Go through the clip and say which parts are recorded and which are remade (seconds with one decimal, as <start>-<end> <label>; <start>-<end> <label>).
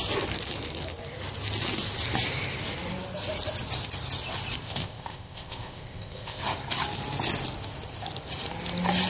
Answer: 0.0-4.6 recorded; 4.6-6.4 remade; 6.4-9.1 recorded